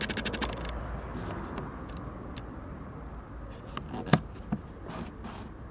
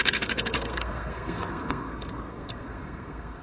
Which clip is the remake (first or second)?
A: second